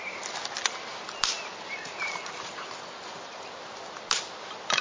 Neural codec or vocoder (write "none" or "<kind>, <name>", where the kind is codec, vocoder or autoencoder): none